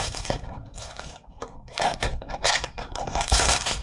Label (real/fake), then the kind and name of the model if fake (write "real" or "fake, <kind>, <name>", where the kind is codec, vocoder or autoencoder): fake, codec, SNAC